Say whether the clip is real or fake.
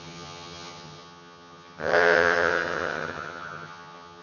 fake